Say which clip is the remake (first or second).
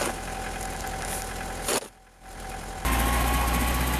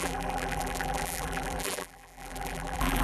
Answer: second